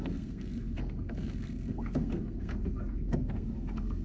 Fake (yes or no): yes